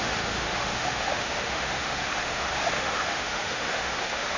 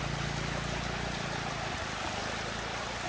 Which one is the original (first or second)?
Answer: second